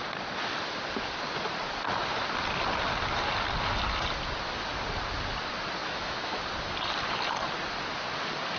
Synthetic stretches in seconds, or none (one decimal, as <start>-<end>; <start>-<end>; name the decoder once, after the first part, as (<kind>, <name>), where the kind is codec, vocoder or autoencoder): 5.8-6.4 (autoencoder, DAC-VAE)